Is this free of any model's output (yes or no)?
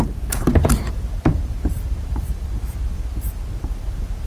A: no